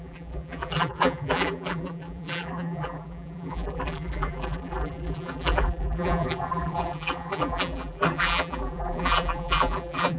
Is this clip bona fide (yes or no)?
no